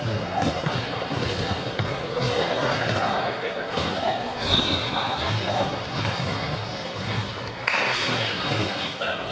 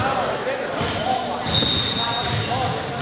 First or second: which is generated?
first